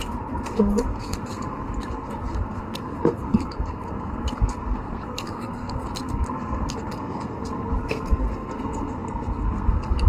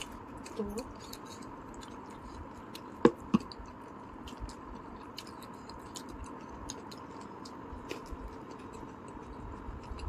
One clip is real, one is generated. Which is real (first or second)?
second